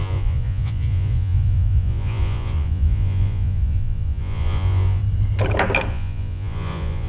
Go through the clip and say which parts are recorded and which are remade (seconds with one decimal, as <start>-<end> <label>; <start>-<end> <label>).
0.0-5.0 remade; 5.0-5.9 recorded; 5.9-7.1 remade

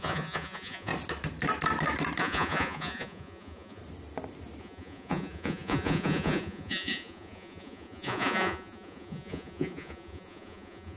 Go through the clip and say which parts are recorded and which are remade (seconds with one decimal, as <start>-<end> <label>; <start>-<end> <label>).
0.0-0.9 remade; 0.9-2.2 recorded; 2.2-3.8 remade; 3.8-4.6 recorded; 4.6-11.0 remade